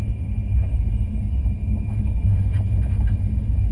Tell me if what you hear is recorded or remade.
remade